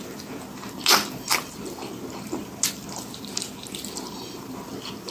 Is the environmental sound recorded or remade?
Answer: recorded